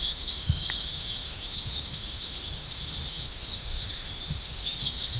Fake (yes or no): yes